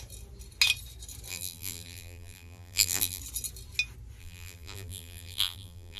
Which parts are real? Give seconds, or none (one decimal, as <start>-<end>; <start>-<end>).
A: 0.0-1.3; 3.2-4.2